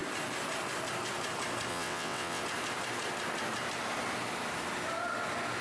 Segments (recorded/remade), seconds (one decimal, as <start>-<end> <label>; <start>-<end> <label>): 0.0-1.7 recorded; 1.7-2.4 remade; 2.4-5.6 recorded